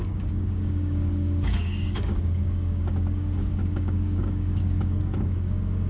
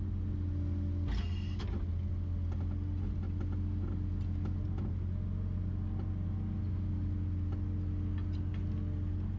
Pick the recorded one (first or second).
second